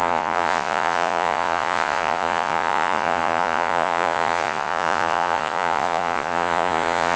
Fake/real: fake